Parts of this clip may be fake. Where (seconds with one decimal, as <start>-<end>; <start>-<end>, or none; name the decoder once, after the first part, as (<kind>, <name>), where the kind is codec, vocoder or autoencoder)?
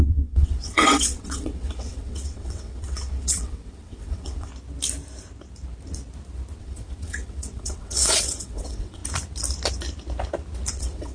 0.0-4.5 (vocoder, WaveNeXt); 6.6-9.0; 10.7-11.1